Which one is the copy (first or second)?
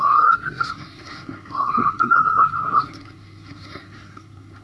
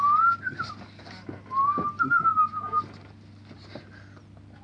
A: first